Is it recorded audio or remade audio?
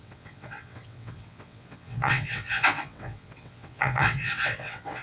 remade